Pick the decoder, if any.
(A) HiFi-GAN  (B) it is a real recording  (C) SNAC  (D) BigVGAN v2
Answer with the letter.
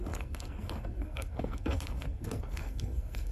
C